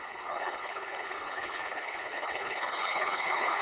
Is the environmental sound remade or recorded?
remade